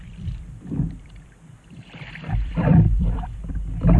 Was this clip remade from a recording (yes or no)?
yes